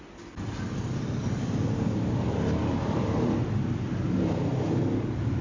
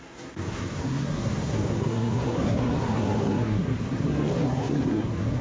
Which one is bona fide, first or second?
first